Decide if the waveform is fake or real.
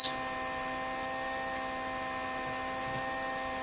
real